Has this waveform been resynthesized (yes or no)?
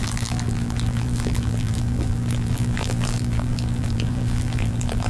yes